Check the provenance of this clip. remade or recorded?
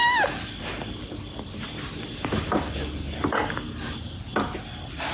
recorded